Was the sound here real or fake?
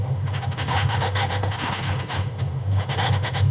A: fake